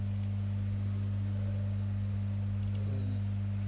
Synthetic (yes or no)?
no